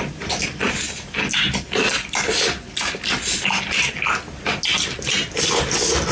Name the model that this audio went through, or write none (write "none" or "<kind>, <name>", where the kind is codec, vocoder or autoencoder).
none